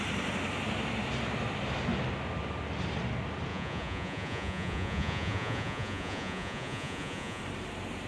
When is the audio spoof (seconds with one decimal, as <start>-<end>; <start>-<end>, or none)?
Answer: 3.5-7.4

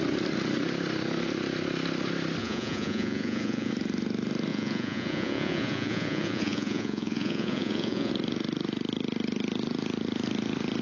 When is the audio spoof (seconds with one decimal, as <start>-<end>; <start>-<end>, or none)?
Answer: 2.4-3.7; 4.5-8.1

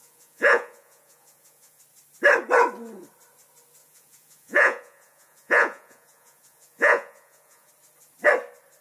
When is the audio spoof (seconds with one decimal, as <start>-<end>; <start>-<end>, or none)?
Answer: 0.0-1.8; 3.8-7.7

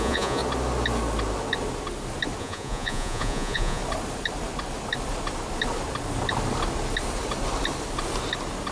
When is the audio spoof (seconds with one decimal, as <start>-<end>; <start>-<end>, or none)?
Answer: 0.0-0.4; 2.4-3.8

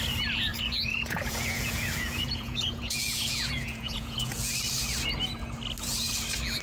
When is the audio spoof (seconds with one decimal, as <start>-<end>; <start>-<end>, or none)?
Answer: 0.5-4.5

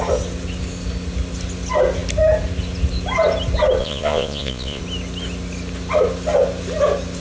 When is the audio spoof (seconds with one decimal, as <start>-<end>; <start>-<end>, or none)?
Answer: 3.8-4.8